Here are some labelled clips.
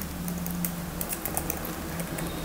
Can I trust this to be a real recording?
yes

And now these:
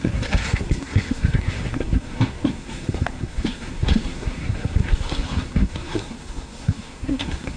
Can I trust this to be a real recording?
no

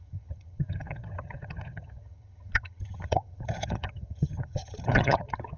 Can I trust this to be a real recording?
no